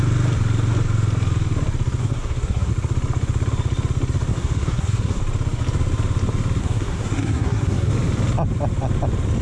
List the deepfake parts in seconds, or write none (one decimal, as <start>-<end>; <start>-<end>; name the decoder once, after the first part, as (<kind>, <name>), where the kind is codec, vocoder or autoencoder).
2.0-2.7 (codec, SNAC); 4.3-5.2; 6.6-7.9